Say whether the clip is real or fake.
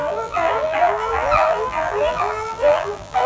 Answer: fake